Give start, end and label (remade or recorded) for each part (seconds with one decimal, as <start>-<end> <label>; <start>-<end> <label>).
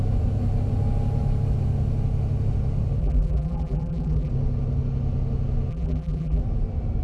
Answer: 0.0-3.0 recorded; 3.0-4.3 remade; 4.3-5.7 recorded; 5.7-6.4 remade; 6.4-7.0 recorded